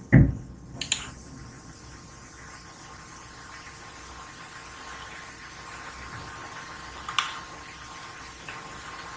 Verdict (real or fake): real